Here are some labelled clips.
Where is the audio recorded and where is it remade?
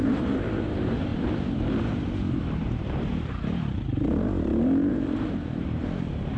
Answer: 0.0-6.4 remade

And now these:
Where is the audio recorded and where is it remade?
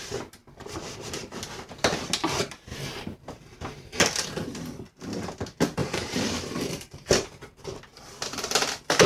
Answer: 0.0-0.4 recorded; 0.4-1.3 remade; 1.3-2.7 recorded; 2.7-4.0 remade; 4.0-5.8 recorded; 5.8-7.1 remade; 7.1-9.1 recorded